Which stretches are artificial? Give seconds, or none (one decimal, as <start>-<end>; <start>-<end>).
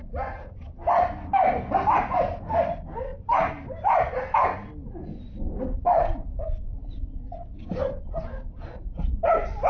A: 3.1-4.0